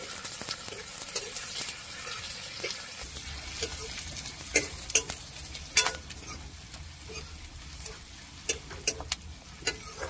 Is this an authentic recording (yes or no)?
yes